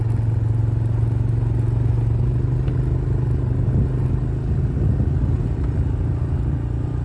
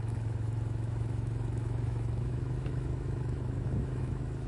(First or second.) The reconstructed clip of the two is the second